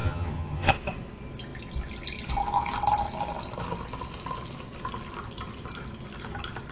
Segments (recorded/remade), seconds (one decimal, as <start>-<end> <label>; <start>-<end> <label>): 0.0-0.7 remade; 0.7-6.7 recorded